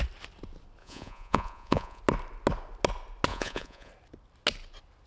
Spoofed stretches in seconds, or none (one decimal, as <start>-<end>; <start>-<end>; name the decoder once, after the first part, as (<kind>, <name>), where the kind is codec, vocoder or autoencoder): 0.8-2.0 (vocoder, Vocos); 3.3-3.9